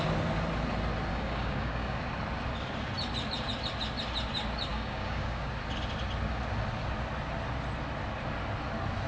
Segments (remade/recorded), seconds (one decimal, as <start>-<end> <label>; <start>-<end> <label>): 0.0-1.1 recorded; 1.1-2.0 remade; 2.0-4.7 recorded; 4.7-5.5 remade; 5.5-9.1 recorded